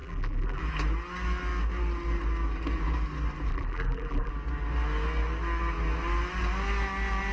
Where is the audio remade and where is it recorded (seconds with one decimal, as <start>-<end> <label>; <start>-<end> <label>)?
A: 0.0-0.6 remade; 0.6-3.5 recorded; 3.5-4.3 remade; 4.3-7.3 recorded